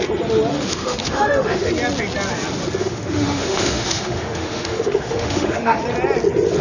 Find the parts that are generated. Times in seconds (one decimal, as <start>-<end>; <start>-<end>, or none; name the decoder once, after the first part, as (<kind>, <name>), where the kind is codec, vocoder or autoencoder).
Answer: 0.5-1.7 (autoencoder, DAC-VAE); 2.8-5.8